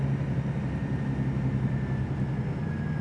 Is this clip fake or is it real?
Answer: real